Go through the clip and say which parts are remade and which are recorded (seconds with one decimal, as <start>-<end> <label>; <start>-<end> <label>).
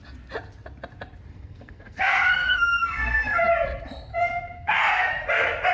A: 0.0-1.3 recorded; 1.3-3.4 remade; 3.4-4.1 recorded; 4.1-5.1 remade; 5.1-5.7 recorded